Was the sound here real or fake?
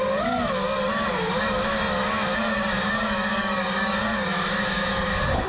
fake